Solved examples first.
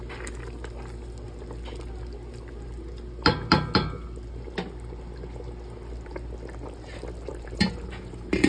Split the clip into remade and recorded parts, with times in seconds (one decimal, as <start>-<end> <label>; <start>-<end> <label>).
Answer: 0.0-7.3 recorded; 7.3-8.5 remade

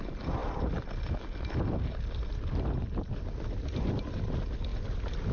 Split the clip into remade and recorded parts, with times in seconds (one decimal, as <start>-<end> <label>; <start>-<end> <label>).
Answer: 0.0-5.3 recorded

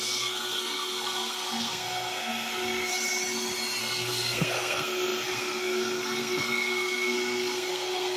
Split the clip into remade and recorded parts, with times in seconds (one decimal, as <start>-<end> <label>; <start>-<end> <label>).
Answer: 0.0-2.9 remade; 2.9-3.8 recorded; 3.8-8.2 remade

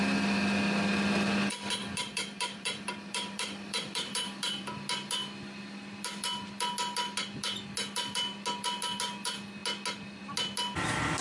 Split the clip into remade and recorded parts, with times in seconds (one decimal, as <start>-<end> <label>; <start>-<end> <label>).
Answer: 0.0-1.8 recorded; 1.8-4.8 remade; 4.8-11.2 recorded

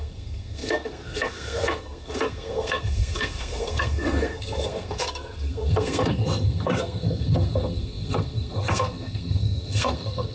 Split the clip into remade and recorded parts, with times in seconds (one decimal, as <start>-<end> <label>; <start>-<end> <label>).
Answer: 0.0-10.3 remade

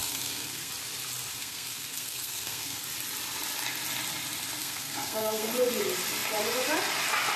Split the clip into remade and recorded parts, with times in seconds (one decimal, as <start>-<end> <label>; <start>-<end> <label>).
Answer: 0.0-0.7 remade; 0.7-1.3 recorded; 1.3-2.8 remade; 2.8-4.6 recorded; 4.6-5.5 remade; 5.5-7.4 recorded

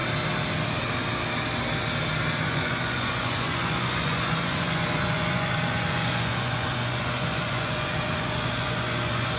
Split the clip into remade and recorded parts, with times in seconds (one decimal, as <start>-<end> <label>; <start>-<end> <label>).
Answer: 0.0-2.4 recorded; 2.4-9.4 remade

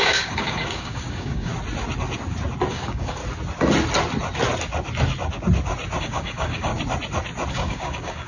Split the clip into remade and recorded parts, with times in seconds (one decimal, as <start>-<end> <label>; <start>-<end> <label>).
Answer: 0.0-1.5 remade; 1.5-2.7 recorded; 2.7-3.2 remade; 3.2-6.0 recorded; 6.0-6.7 remade; 6.7-7.5 recorded; 7.5-8.3 remade